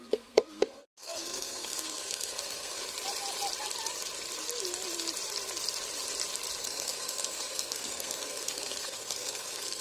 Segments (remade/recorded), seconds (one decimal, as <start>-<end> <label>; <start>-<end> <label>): 0.0-2.8 remade; 2.8-6.6 recorded; 6.6-9.8 remade